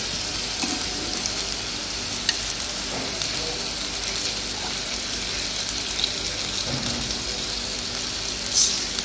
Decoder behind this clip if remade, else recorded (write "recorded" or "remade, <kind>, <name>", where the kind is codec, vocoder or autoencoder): recorded